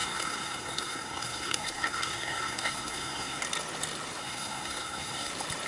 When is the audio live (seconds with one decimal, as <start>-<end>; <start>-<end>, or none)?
3.4-4.2; 5.3-5.7